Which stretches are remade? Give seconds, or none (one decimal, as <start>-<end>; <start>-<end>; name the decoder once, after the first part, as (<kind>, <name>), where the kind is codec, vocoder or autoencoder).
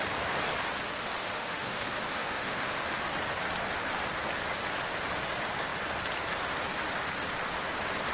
1.0-3.0 (autoencoder, DAC-VAE)